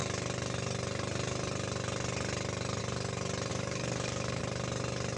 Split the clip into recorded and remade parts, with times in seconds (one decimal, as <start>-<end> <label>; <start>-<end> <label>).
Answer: 0.0-3.5 recorded; 3.5-4.4 remade; 4.4-5.2 recorded